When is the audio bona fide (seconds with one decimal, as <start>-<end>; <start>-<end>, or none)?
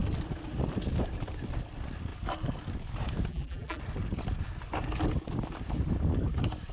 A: 0.0-3.3; 3.8-6.7